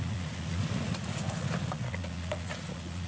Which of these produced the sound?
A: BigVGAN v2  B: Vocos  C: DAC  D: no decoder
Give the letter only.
B